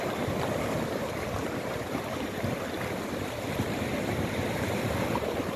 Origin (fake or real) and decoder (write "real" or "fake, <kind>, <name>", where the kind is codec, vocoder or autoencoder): real